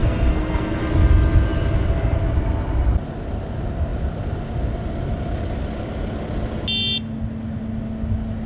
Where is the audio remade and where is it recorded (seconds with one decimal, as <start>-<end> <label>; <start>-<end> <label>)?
0.0-0.8 remade; 0.8-8.5 recorded